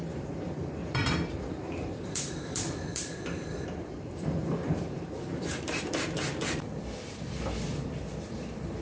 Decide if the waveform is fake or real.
fake